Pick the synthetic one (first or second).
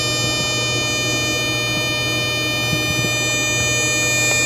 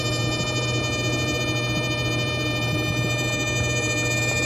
second